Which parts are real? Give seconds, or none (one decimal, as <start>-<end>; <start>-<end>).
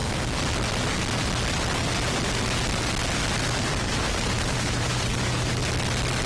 0.0-3.8; 5.6-6.3